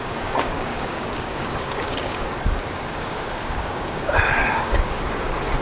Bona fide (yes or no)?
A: no